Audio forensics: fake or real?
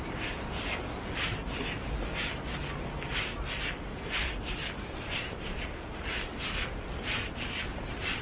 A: real